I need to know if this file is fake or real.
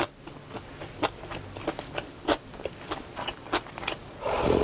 real